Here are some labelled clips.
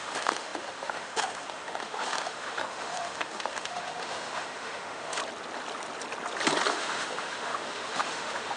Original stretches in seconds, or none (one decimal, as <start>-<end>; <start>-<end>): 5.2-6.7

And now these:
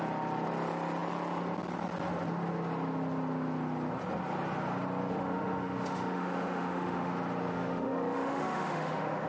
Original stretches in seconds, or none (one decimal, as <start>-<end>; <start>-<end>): 0.0-5.1; 7.1-7.5

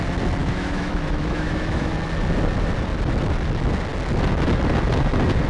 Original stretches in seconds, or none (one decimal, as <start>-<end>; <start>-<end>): 0.0-0.4; 1.9-5.5

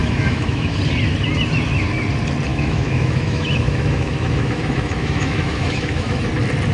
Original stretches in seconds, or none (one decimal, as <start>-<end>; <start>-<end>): 0.8-2.5; 6.3-6.7

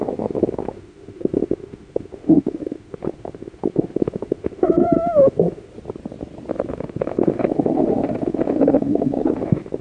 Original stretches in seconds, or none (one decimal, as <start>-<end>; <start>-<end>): 5.7-6.7

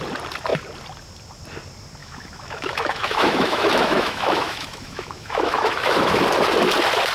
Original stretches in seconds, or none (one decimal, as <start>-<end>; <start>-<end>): 0.0-2.0; 6.2-7.1

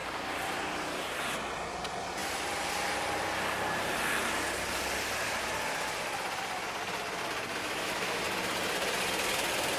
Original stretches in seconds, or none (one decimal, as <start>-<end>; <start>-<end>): 0.0-7.6; 8.2-9.8